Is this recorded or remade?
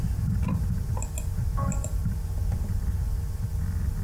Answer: recorded